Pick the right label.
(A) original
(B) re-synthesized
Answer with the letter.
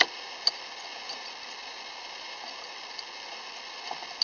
A